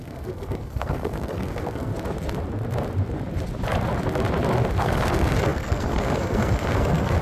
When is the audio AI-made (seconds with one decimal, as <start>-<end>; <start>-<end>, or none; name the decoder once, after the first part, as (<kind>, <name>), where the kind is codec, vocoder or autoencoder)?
0.0-1.9 (codec, SNAC); 4.8-7.2

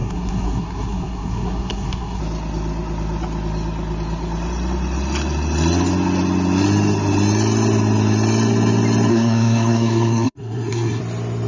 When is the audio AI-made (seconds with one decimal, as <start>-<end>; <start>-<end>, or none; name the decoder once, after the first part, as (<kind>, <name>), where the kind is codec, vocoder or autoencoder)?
0.0-2.2 (codec, SNAC); 9.1-11.0